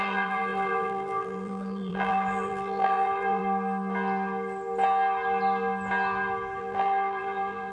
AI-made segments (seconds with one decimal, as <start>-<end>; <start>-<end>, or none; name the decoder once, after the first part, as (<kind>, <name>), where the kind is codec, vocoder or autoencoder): 0.0-3.4 (vocoder, BigVGAN v2); 6.6-7.7